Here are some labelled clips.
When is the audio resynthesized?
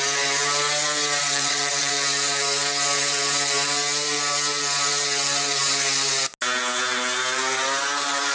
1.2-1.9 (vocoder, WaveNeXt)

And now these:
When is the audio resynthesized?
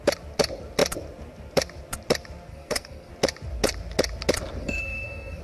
2.5-3.1 (codec, SNAC); 4.6-5.4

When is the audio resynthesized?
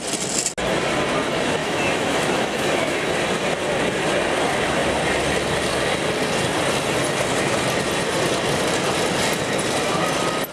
1.6-3.1 (autoencoder, DAC-VAE)